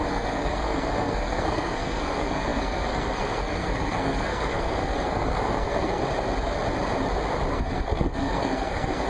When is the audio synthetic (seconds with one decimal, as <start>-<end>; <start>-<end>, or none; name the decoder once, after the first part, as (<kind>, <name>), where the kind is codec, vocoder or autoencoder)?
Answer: 0.0-6.0 (codec, SNAC); 7.5-9.1